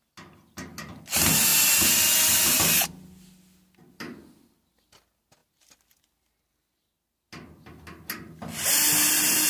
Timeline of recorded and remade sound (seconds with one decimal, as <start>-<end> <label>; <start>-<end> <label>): 0.0-9.5 recorded